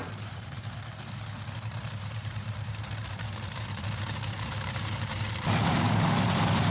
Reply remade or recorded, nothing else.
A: remade